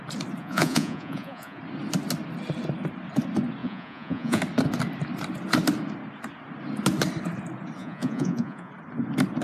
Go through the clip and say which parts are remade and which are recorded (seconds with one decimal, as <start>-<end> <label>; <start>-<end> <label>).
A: 0.0-0.4 recorded; 0.4-1.6 remade; 1.6-3.6 recorded; 3.6-4.4 remade; 4.4-7.8 recorded; 7.8-8.7 remade; 8.7-9.4 recorded